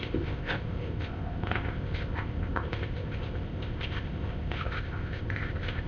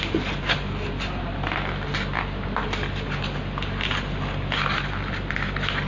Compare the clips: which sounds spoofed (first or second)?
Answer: first